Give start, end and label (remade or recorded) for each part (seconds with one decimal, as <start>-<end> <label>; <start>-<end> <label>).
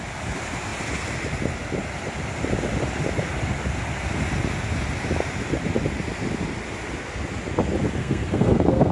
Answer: 0.0-8.0 recorded; 8.0-8.9 remade